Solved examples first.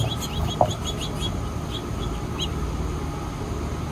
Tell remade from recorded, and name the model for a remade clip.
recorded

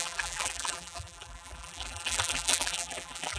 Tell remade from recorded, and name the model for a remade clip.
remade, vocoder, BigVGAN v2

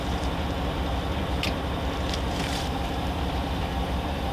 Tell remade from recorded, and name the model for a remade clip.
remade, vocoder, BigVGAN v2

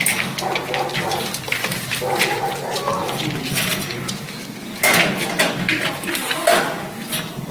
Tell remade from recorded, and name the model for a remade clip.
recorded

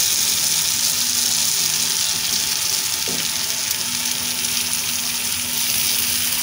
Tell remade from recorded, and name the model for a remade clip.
recorded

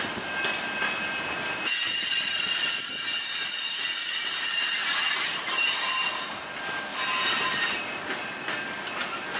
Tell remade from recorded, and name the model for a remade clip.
recorded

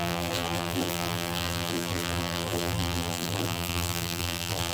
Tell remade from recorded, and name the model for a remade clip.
remade, vocoder, BigVGAN v2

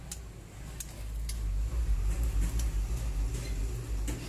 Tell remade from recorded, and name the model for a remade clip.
recorded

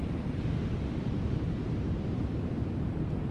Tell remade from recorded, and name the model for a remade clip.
recorded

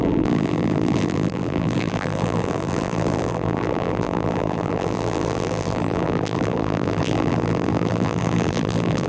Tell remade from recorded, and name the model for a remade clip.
remade, vocoder, BigVGAN v2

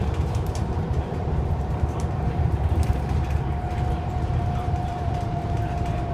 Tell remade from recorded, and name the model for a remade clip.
remade, vocoder, BigVGAN v2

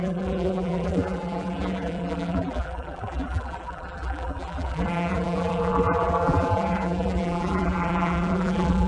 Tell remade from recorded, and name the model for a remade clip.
remade, vocoder, BigVGAN v2